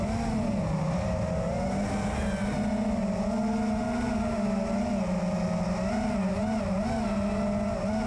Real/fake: real